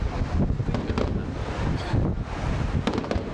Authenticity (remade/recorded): recorded